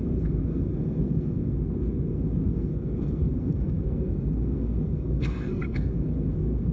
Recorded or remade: remade